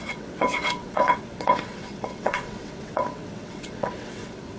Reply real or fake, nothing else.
fake